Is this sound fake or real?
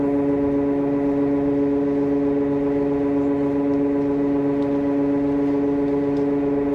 real